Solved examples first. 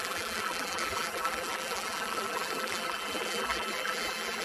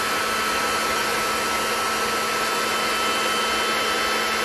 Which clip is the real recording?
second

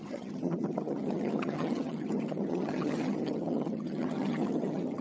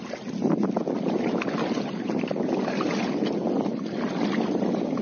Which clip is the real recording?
second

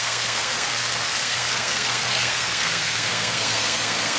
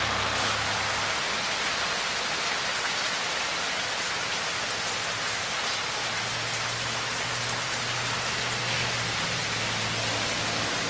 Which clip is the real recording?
second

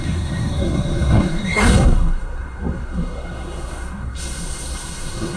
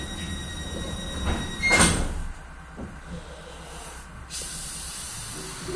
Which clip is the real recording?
second